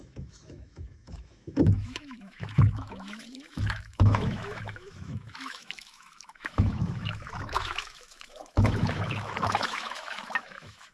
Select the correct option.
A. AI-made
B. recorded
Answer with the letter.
A